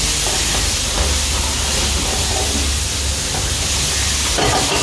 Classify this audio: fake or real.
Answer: real